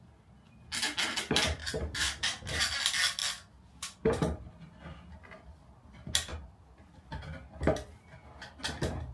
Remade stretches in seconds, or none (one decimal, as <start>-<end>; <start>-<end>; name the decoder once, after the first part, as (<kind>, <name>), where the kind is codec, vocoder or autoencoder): 1.6-2.6 (vocoder, BigVGAN v2); 6.3-7.0